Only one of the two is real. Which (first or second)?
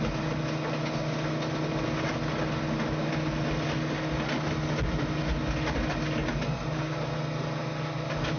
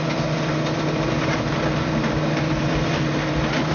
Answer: first